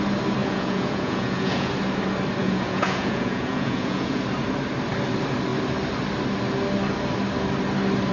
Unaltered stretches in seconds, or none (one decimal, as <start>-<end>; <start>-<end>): 0.0-0.4; 1.7-2.4; 4.2-8.1